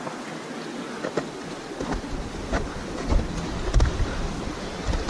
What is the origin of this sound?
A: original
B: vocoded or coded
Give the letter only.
A